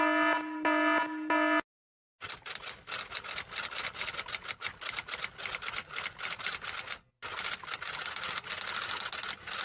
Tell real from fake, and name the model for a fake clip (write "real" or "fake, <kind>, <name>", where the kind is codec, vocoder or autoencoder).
real